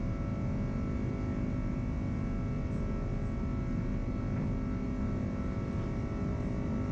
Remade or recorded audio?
recorded